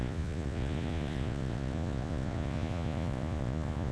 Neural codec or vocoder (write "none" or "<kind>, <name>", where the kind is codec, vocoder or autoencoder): vocoder, Vocos